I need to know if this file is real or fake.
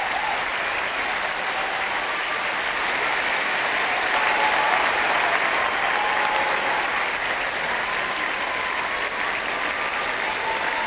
real